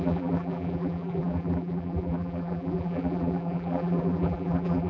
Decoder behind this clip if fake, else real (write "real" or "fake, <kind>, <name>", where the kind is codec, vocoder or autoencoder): fake, vocoder, BigVGAN v2